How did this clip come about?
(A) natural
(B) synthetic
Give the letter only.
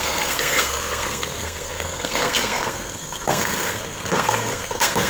B